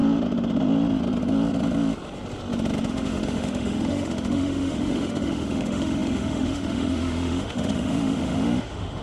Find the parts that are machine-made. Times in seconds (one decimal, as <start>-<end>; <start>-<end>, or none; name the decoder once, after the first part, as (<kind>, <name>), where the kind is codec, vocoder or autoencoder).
2.9-9.0 (autoencoder, DAC-VAE)